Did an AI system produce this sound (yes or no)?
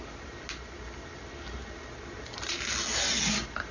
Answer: no